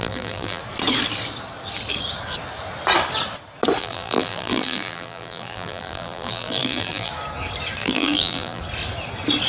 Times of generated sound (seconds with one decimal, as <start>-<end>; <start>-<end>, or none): 0.0-0.6; 3.8-7.1; 7.8-8.6